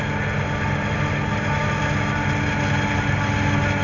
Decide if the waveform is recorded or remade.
recorded